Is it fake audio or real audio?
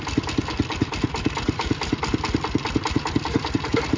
real